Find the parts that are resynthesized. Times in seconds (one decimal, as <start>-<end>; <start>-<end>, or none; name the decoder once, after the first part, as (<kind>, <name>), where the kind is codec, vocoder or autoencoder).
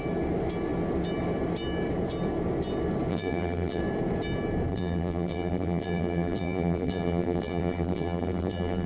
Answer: 3.1-3.8 (vocoder, BigVGAN v2); 4.7-8.9